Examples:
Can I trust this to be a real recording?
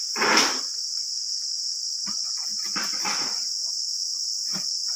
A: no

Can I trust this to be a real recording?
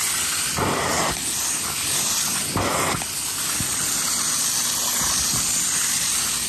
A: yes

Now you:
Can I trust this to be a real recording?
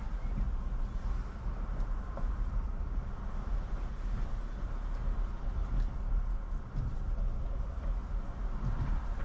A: yes